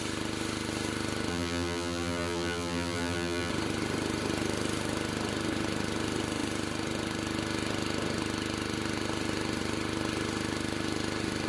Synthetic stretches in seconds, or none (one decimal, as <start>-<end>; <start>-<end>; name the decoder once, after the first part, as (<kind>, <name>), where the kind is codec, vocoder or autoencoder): 1.3-3.5 (vocoder, BigVGAN v2)